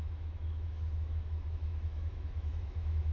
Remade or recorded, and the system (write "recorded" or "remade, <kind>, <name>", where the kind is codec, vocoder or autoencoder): remade, autoencoder, DAC-VAE